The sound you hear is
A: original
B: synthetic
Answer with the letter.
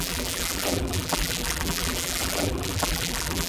B